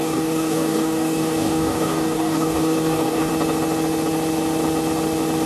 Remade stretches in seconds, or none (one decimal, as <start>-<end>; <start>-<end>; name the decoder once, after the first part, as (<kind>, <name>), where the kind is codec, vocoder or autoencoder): 0.0-3.3 (codec, DAC)